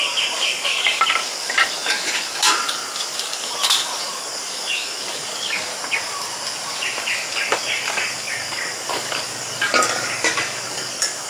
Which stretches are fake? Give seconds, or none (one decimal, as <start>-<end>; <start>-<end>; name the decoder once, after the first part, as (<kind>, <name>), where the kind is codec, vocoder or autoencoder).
0.0-5.7 (codec, DAC); 7.0-11.3